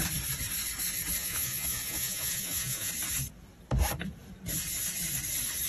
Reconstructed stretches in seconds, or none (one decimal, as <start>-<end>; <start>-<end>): 1.2-2.9